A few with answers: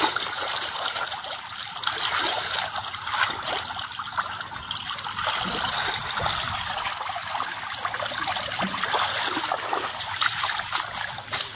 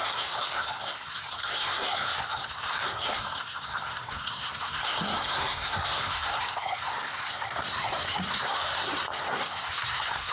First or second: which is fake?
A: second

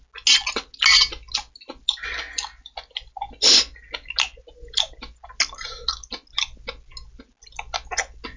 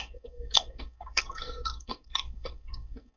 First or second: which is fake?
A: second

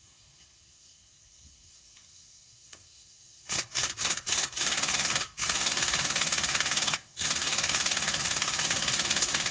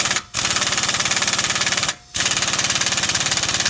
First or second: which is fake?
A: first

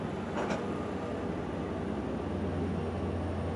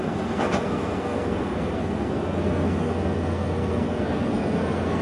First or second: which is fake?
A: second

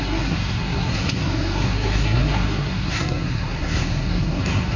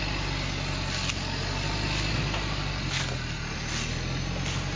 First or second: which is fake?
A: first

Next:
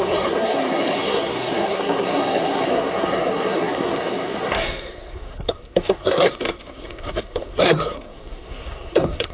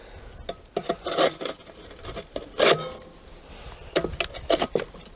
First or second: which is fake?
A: first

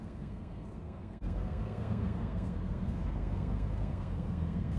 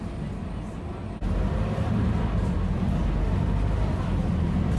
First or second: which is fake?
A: first